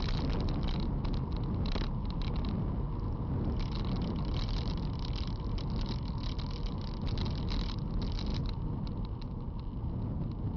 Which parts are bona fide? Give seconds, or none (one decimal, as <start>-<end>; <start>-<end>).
0.0-10.6